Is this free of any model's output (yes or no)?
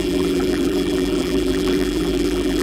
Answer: no